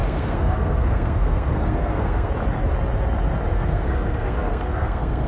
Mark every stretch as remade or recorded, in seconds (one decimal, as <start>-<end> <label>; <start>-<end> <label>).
0.0-2.3 remade; 2.3-3.5 recorded; 3.5-5.3 remade